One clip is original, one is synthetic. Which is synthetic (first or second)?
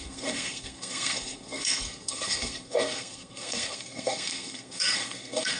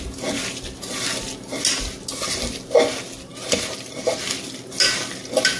first